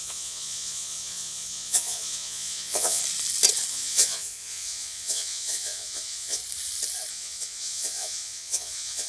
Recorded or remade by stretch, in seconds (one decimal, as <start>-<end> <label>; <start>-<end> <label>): 0.0-3.0 remade; 3.0-3.7 recorded; 3.7-6.4 remade; 6.4-7.1 recorded; 7.1-9.1 remade